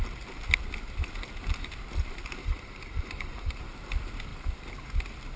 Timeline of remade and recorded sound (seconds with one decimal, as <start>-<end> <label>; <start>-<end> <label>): 0.0-2.4 recorded; 2.4-3.6 remade; 3.6-5.4 recorded